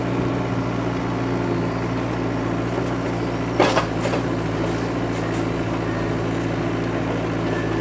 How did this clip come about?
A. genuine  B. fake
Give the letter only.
A